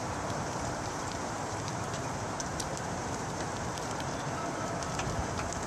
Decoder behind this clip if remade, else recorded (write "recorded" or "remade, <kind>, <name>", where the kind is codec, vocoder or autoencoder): remade, vocoder, BigVGAN v2